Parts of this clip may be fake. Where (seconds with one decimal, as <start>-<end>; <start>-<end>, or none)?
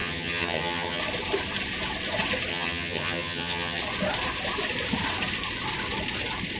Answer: 0.0-1.0; 2.5-3.8